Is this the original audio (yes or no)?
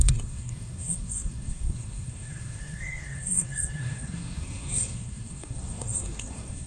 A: no